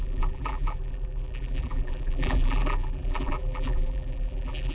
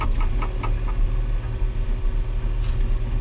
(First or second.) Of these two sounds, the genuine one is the second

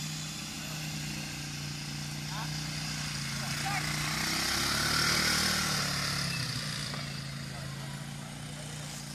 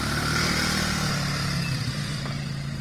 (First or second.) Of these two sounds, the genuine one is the first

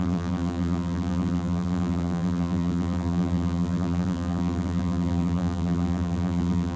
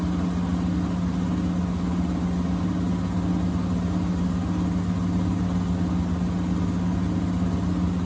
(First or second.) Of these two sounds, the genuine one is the second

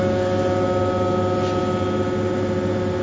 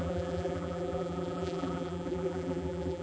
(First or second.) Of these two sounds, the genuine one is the first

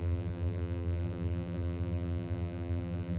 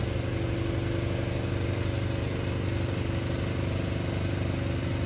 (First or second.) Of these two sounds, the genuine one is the second